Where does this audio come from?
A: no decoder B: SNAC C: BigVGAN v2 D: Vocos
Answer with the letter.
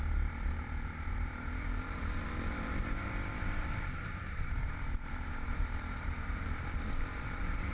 C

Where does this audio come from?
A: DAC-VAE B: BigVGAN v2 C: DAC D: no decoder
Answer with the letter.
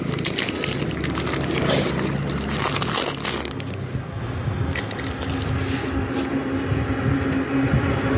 D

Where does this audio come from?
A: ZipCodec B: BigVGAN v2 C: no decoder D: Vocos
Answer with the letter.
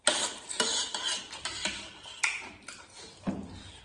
C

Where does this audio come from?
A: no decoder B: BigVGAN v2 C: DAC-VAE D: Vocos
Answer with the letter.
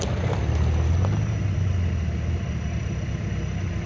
A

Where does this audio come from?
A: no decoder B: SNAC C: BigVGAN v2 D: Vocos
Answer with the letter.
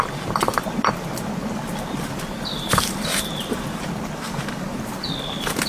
C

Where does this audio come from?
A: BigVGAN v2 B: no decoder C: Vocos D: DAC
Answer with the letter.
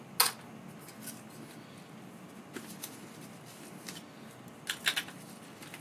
B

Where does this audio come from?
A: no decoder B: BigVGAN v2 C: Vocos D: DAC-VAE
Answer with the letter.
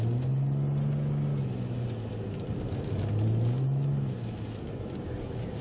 A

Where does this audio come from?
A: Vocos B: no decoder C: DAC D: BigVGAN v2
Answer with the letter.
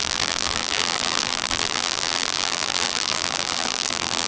D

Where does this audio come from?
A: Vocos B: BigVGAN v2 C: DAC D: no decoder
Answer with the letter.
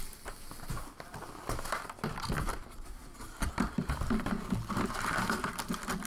D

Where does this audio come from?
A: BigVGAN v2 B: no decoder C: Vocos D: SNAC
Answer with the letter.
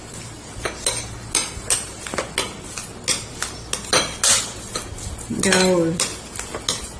B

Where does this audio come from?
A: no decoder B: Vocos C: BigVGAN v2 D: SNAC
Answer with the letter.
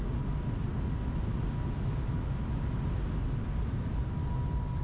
A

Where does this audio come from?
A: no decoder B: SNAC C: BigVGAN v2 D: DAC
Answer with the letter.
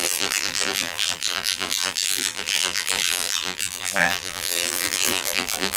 C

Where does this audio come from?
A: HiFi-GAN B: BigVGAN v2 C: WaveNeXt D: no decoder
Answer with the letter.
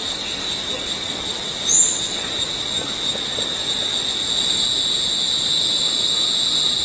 D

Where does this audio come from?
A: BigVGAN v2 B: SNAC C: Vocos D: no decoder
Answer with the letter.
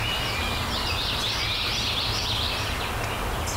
D